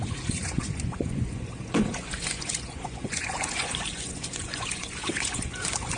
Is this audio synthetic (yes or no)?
yes